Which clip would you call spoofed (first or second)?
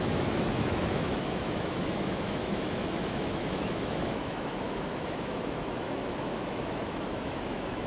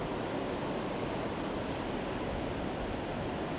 first